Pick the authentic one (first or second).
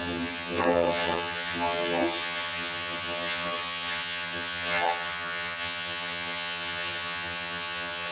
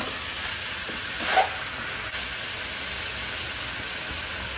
second